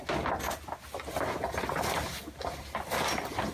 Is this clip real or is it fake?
real